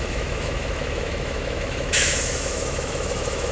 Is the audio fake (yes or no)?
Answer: yes